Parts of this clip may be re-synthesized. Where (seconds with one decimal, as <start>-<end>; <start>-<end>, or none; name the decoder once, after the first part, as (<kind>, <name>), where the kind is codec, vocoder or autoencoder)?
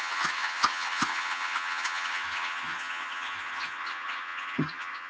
0.0-5.1 (vocoder, HiFi-GAN)